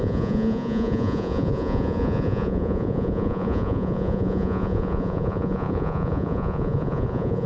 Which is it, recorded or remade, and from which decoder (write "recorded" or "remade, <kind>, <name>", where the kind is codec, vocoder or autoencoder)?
remade, vocoder, Vocos